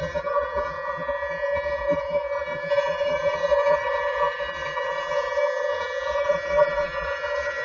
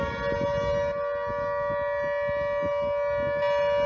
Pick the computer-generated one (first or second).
first